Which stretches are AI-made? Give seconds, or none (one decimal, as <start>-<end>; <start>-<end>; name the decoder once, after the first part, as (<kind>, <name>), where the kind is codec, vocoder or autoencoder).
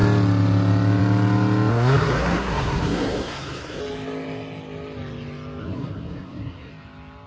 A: 1.7-3.8 (codec, SNAC); 5.6-6.7